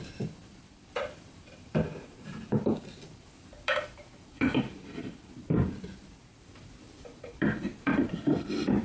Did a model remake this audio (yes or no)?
yes